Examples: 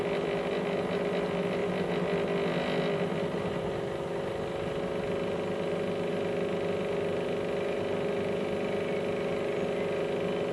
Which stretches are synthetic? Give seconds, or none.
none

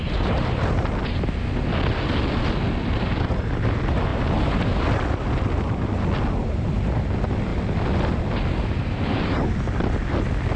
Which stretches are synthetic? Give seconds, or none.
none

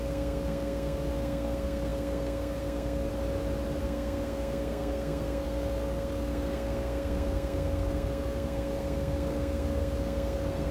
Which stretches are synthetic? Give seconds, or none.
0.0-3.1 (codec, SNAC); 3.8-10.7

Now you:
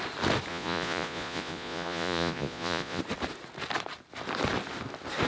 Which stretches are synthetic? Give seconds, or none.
0.5-3.0 (vocoder, Vocos)

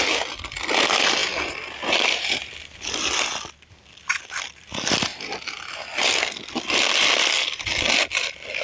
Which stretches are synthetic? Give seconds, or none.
none